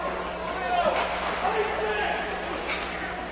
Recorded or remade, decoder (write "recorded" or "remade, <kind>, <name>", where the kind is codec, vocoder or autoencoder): recorded